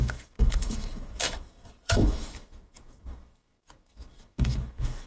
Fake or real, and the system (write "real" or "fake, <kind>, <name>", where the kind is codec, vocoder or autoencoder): fake, autoencoder, DAC-VAE